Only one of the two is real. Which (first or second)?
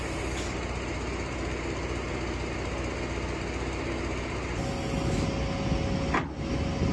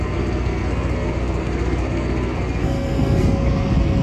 first